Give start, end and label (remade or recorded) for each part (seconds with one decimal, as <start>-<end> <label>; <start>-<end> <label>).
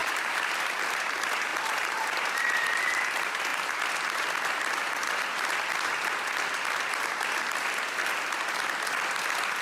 0.0-0.8 remade; 0.8-1.5 recorded; 1.5-2.1 remade; 2.1-3.5 recorded; 3.5-4.3 remade; 4.3-9.6 recorded